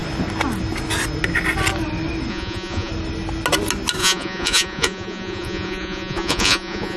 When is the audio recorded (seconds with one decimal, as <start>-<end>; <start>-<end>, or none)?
0.0-2.3; 2.9-4.0